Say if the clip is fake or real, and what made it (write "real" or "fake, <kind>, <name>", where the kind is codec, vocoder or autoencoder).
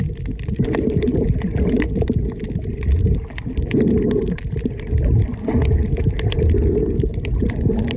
real